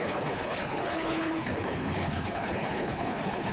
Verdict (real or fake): fake